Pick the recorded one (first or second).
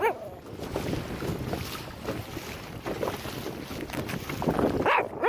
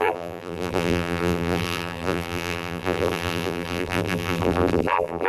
first